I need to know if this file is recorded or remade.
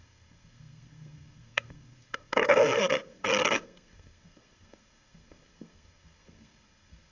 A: remade